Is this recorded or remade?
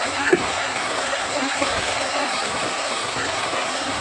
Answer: remade